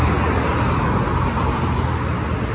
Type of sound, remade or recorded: recorded